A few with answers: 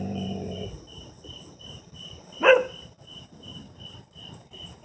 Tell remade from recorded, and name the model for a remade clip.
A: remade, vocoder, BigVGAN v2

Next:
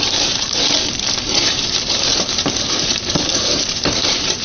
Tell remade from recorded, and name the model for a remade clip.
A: remade, vocoder, BigVGAN v2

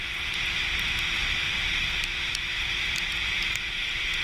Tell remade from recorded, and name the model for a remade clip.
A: recorded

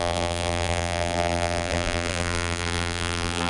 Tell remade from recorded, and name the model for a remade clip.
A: remade, vocoder, BigVGAN v2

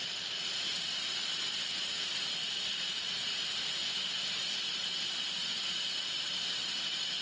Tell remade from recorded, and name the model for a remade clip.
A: remade, vocoder, BigVGAN v2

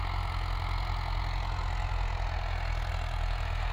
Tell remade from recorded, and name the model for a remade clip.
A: recorded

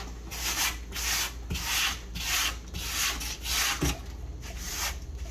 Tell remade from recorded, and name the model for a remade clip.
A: recorded